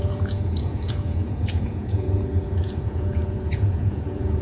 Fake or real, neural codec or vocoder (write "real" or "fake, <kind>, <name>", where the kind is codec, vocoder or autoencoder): fake, vocoder, Vocos